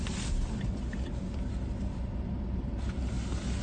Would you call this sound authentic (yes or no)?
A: yes